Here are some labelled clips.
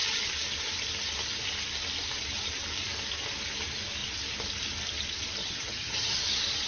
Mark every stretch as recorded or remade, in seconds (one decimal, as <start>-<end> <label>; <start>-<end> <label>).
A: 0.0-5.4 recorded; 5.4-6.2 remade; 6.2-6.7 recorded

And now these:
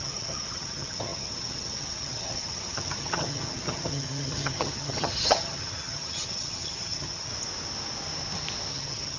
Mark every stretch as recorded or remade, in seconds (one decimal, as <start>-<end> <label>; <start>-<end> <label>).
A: 0.0-7.3 remade; 7.3-8.7 recorded; 8.7-9.2 remade

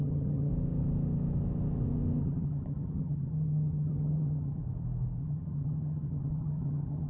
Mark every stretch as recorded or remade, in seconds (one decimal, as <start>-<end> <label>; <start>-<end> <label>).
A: 0.0-0.5 remade; 0.5-2.2 recorded; 2.2-4.6 remade; 4.6-5.2 recorded; 5.2-7.1 remade